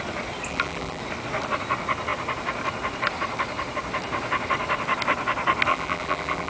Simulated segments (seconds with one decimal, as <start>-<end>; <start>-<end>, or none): 0.5-1.0; 5.7-6.5

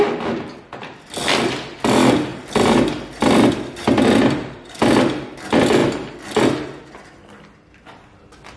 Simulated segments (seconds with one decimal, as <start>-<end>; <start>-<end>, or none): none

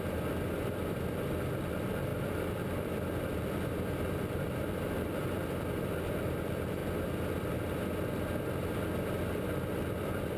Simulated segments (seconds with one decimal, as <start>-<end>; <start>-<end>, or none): 0.0-6.8; 10.0-10.4

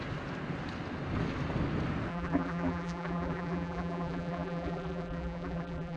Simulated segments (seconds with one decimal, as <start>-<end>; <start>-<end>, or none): 2.1-6.0

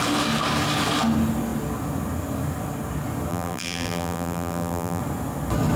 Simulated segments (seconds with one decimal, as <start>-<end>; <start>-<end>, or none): 3.3-5.0